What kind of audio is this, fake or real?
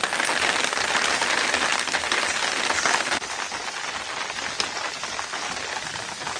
real